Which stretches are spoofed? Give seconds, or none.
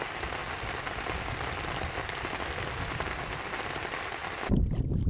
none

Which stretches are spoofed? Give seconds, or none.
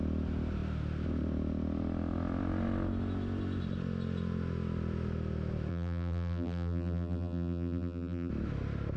5.7-8.3 (vocoder, BigVGAN v2)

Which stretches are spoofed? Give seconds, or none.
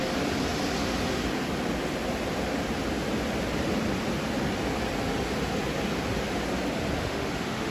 7.0-7.7 (autoencoder, DAC-VAE)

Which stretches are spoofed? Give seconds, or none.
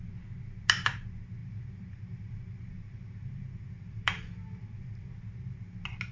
1.4-5.1 (vocoder, BigVGAN v2)